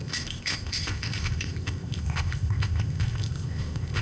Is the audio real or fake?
fake